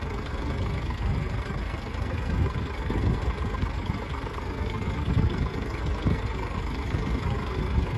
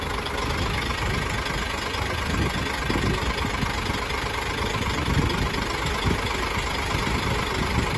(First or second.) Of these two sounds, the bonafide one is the second